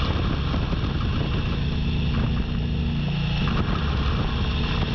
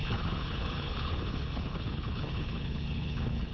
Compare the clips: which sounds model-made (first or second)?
second